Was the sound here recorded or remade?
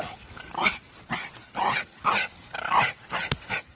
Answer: recorded